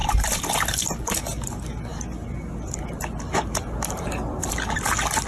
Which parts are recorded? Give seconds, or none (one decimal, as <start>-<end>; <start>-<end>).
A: 0.8-5.3